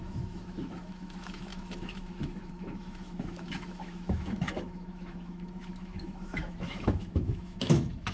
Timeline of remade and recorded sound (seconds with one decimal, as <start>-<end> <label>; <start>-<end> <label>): 0.0-8.1 remade